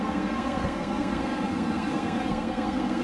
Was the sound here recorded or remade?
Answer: remade